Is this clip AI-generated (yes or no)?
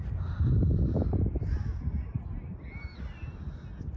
no